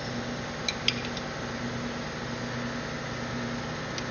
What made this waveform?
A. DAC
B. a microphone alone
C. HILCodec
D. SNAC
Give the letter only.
B